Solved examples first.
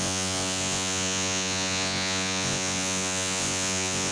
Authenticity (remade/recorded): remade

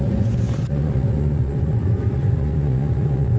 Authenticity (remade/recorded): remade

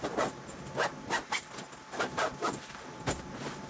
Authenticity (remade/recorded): recorded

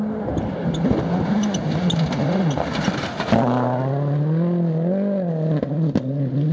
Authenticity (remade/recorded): recorded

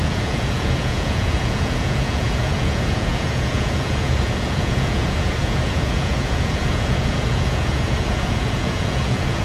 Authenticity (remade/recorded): remade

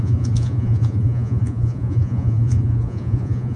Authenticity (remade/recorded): remade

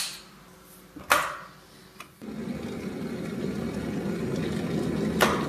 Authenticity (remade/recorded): recorded